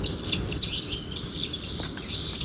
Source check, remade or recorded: recorded